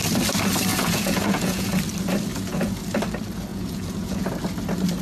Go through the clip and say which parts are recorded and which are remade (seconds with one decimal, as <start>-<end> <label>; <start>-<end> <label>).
0.0-0.7 recorded; 0.7-1.7 remade; 1.7-2.3 recorded; 2.3-2.8 remade; 2.8-3.5 recorded; 3.5-4.4 remade; 4.4-5.0 recorded